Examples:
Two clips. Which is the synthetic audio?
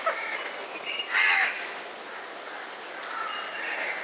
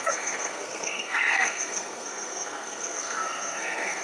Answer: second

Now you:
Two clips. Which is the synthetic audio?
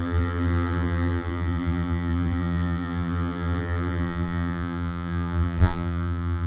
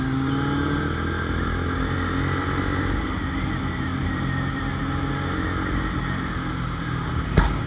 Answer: first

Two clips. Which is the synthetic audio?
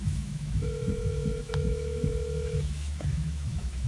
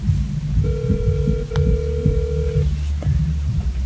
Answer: first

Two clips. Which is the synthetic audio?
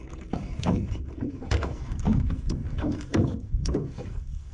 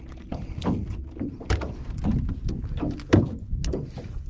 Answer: first